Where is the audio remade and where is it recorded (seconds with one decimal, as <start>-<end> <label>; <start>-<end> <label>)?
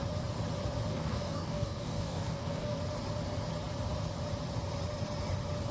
0.0-0.9 recorded; 0.9-2.8 remade; 2.8-5.7 recorded